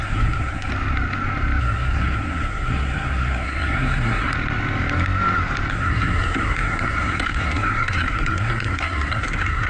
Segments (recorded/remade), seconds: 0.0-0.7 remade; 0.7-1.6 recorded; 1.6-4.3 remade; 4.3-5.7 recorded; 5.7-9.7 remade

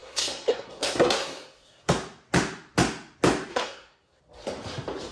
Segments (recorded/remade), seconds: 0.0-1.9 remade; 1.9-3.5 recorded; 3.5-4.2 remade; 4.2-5.1 recorded